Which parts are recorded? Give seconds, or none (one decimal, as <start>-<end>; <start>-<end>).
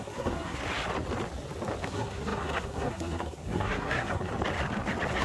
0.6-1.8; 4.3-5.2